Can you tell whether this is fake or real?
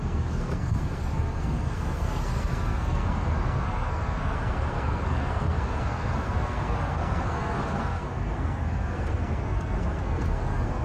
fake